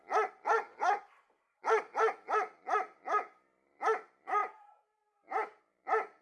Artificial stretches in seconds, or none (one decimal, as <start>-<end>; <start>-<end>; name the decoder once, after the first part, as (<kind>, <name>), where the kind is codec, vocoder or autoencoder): none